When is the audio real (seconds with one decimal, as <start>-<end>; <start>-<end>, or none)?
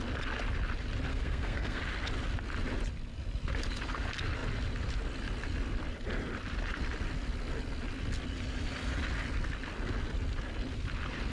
0.0-1.1; 1.8-11.3